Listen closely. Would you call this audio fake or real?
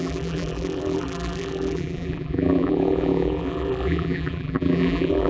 fake